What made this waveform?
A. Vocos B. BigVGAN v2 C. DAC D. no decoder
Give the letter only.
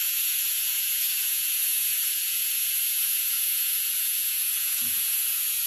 A